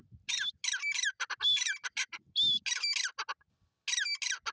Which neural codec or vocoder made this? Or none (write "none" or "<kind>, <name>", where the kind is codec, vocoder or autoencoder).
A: none